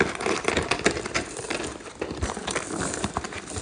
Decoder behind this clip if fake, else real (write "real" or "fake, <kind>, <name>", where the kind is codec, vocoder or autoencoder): fake, vocoder, BigVGAN v2